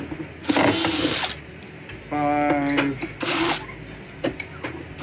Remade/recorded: recorded